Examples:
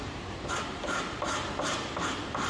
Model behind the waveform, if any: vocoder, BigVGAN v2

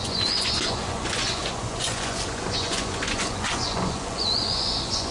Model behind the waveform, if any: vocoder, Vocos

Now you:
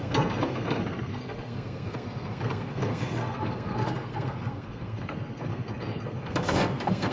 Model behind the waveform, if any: codec, SNAC